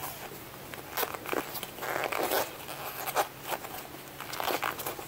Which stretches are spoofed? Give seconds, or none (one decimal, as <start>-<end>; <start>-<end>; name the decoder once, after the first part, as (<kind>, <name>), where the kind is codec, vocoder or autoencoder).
none